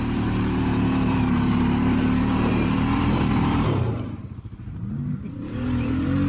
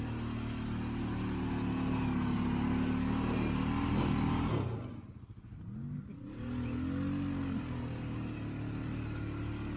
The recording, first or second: second